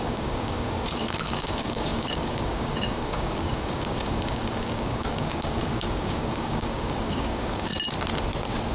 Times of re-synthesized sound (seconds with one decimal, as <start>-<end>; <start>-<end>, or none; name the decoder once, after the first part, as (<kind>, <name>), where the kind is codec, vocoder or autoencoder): 0.0-7.7 (codec, DAC)